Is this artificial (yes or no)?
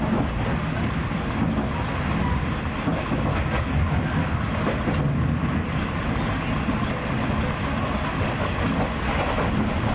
no